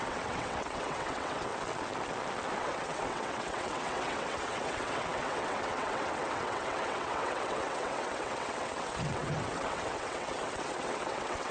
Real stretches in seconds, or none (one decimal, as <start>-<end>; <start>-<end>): 1.5-2.6